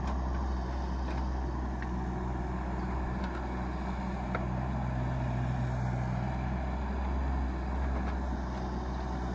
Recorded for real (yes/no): yes